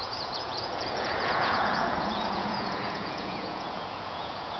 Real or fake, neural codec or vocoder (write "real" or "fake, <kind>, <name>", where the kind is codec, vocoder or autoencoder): fake, vocoder, Vocos